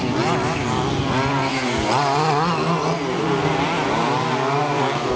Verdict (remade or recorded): recorded